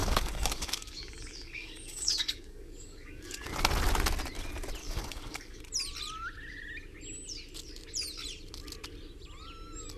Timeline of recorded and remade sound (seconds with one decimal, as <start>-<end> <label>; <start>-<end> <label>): 0.0-3.5 remade; 3.5-4.8 recorded; 4.8-5.6 remade; 5.6-10.0 recorded